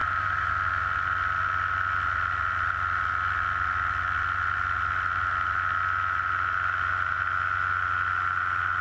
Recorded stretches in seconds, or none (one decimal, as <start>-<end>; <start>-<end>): 0.5-8.8